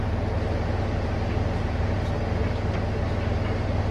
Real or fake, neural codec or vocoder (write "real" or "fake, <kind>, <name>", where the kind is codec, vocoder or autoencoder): real